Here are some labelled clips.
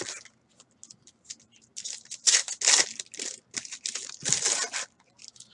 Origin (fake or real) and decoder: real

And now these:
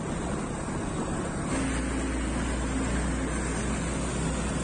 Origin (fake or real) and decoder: real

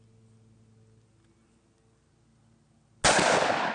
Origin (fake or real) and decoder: real